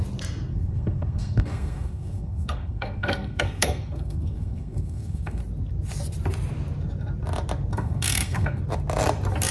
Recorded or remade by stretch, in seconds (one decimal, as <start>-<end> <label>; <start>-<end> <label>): 0.0-0.5 recorded; 0.5-5.4 remade; 5.4-7.7 recorded; 7.7-8.6 remade; 8.6-9.5 recorded